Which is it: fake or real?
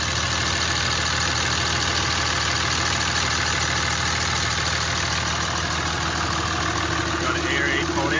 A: real